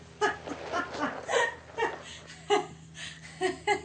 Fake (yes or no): no